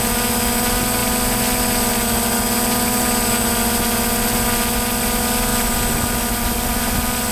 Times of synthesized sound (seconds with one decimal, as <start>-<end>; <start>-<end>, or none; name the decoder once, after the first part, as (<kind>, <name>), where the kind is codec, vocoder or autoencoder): none

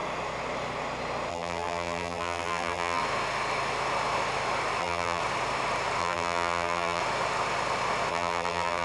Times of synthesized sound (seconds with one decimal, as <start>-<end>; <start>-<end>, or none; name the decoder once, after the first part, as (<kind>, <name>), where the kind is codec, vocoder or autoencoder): 1.3-3.0 (vocoder, BigVGAN v2); 4.8-5.2; 6.0-7.0; 8.1-8.8

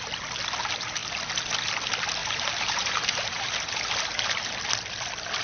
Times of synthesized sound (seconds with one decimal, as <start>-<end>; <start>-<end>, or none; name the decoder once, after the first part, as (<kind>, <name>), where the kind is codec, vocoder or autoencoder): 2.2-4.5 (vocoder, BigVGAN v2)